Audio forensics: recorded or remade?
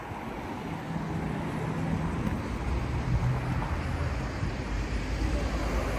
recorded